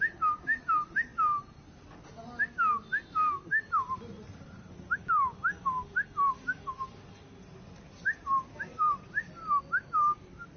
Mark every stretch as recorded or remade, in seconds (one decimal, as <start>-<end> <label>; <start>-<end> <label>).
0.0-10.6 recorded